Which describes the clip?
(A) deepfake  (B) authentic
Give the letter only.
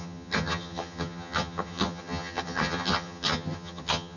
A